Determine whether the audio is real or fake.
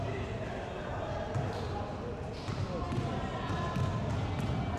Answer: real